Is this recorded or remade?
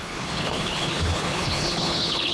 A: remade